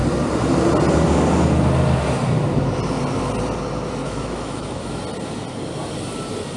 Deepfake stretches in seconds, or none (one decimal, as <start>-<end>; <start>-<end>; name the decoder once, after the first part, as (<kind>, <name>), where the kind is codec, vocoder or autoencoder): 4.0-5.0 (autoencoder, DAC-VAE)